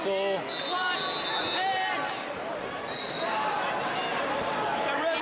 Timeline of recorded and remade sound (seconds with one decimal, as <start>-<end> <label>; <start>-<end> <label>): 0.0-5.2 recorded